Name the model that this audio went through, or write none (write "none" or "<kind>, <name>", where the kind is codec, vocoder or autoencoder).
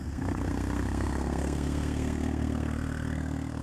codec, SNAC